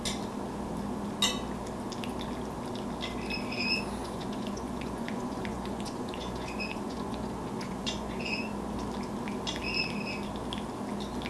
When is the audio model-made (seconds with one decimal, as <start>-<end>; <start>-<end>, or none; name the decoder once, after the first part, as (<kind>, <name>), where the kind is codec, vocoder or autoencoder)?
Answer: 4.0-8.5 (vocoder, Vocos)